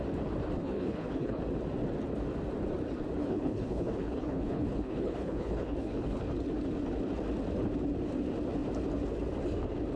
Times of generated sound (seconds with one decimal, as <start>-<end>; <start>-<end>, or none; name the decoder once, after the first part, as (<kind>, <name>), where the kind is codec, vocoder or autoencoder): 0.6-1.4 (codec, HILCodec); 3.2-6.2